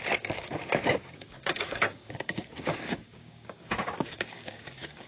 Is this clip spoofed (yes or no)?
yes